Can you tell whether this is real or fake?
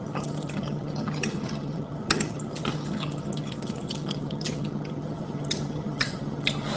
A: fake